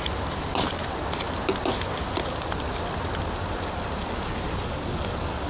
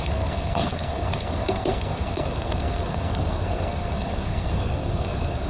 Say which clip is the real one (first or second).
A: first